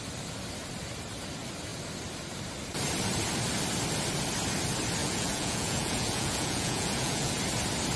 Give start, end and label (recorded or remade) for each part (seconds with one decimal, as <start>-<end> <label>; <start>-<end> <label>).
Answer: 0.0-5.0 recorded; 5.0-7.4 remade; 7.4-8.0 recorded